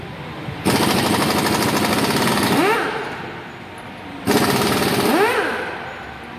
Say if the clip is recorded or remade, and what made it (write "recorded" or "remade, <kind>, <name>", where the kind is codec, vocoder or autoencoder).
recorded